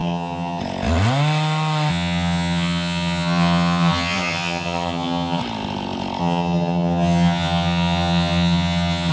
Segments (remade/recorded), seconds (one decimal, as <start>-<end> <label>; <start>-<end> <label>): 0.0-0.6 remade; 0.6-1.9 recorded; 1.9-5.4 remade; 5.4-6.2 recorded; 6.2-9.1 remade